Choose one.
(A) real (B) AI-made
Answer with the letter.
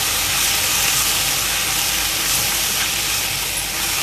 A